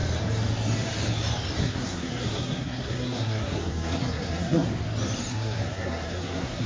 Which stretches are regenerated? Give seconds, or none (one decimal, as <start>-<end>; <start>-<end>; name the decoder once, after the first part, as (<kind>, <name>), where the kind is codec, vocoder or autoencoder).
1.6-4.7 (codec, SNAC); 5.3-6.7

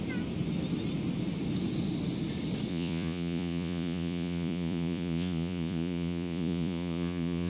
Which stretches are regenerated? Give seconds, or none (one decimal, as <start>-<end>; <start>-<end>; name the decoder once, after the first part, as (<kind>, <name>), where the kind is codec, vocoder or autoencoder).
2.7-7.5 (vocoder, Vocos)

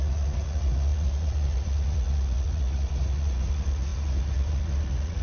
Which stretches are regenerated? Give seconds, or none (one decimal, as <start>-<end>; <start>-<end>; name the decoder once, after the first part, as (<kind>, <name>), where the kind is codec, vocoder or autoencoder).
0.0-5.2 (vocoder, Vocos)

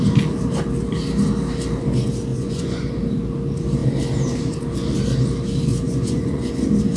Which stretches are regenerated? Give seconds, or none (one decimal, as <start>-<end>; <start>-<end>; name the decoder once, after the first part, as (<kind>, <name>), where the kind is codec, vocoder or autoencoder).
2.3-2.9 (vocoder, Vocos); 5.7-6.5

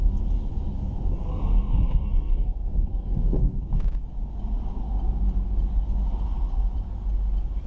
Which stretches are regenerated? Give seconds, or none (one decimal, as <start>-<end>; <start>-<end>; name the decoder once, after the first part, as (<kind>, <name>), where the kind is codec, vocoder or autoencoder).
1.2-3.7 (codec, SNAC)

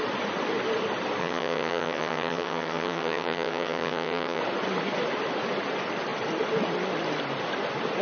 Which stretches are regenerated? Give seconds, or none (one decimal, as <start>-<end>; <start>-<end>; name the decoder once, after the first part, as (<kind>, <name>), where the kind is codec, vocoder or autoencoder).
1.2-4.4 (vocoder, HiFi-GAN)

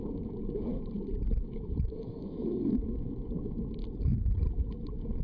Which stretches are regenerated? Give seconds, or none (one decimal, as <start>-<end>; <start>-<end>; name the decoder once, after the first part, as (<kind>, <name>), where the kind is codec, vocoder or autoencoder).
0.0-0.7 (autoencoder, DAC-VAE); 1.4-3.8

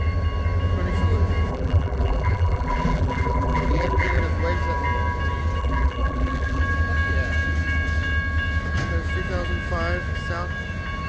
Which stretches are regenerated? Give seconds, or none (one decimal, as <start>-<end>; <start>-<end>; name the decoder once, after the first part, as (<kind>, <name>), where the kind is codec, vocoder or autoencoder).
1.5-4.2 (vocoder, BigVGAN v2); 5.6-6.6